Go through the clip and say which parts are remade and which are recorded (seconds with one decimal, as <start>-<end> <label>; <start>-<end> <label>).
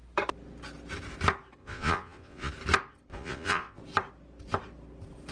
0.0-1.6 recorded; 1.6-2.5 remade; 2.5-3.1 recorded; 3.1-3.8 remade; 3.8-5.3 recorded